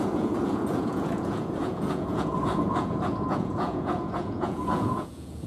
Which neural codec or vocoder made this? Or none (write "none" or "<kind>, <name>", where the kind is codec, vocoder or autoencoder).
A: vocoder, Vocos